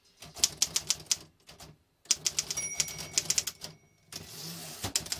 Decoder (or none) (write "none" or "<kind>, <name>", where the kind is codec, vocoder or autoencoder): none